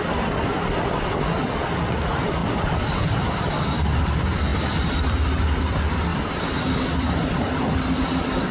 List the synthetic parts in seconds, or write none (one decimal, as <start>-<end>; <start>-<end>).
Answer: 0.0-4.5; 5.4-8.5